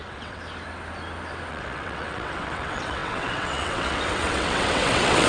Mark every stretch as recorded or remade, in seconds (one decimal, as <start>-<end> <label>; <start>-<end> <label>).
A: 0.0-0.4 remade; 0.4-1.5 recorded; 1.5-5.3 remade